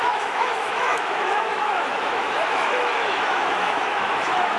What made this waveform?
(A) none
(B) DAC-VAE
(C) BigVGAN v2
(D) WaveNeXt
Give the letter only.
B